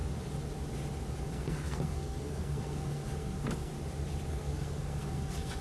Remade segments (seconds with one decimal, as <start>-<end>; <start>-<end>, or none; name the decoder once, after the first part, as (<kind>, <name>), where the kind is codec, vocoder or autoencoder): 1.3-3.7 (codec, SNAC); 4.3-5.6